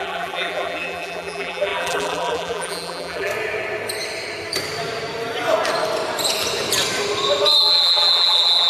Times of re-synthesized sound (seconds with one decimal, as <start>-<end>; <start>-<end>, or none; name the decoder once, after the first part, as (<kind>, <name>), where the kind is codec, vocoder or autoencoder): 0.0-3.3 (vocoder, BigVGAN v2); 7.6-8.7